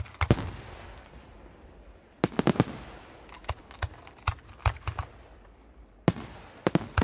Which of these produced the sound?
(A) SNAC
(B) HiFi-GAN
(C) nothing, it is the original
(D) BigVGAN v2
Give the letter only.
C